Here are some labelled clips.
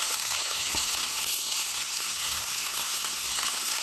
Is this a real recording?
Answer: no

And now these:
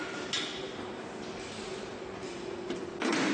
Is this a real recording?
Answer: yes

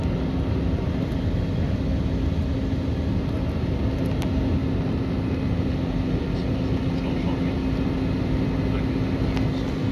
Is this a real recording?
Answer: yes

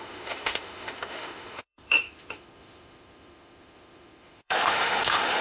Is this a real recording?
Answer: no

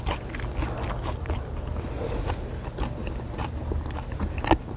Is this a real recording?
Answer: yes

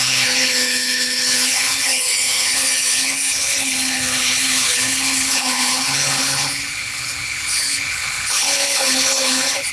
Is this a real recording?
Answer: no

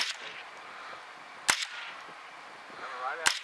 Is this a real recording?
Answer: yes